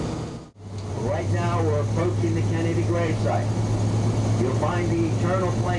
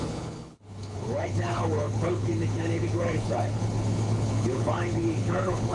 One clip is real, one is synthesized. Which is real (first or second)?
first